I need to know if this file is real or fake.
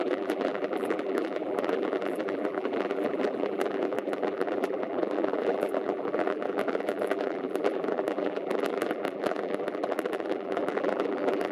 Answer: fake